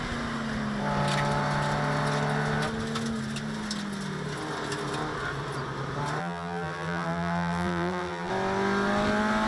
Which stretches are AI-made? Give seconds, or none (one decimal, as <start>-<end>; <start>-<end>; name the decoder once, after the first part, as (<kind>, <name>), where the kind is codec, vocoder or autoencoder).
6.2-8.3 (vocoder, BigVGAN v2)

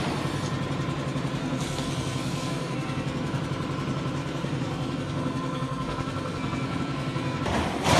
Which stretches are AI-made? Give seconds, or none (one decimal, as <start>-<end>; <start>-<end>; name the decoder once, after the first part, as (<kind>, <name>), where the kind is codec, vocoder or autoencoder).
1.4-3.4 (codec, SNAC); 4.2-7.4